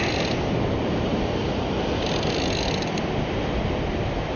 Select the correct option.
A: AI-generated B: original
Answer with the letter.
B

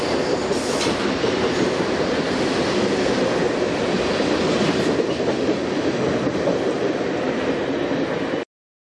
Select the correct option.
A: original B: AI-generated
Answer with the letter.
A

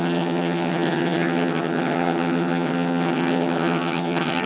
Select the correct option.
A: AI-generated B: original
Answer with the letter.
A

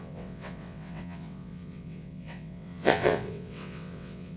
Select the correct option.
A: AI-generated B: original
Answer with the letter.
A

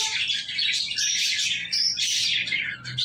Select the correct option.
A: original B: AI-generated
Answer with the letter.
A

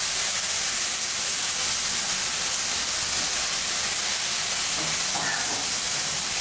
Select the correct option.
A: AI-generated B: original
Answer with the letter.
B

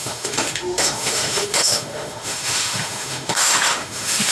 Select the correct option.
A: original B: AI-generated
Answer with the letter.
B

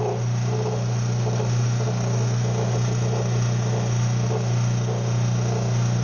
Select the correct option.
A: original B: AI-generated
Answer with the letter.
A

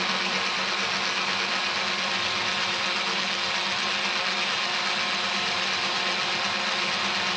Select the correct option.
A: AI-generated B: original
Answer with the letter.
B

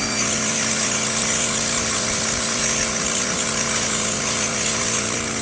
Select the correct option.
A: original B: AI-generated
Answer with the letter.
B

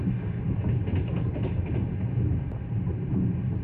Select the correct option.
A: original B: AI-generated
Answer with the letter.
A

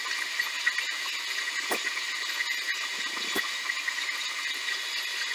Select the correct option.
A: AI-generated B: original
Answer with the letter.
B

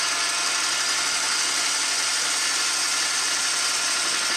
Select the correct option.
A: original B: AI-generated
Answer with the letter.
A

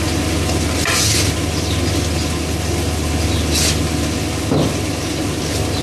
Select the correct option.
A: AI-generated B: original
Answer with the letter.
B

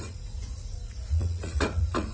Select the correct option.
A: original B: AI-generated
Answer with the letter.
B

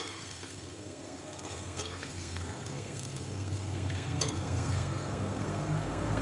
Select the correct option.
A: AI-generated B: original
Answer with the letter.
A